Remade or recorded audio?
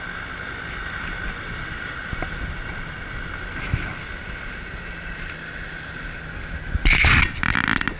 recorded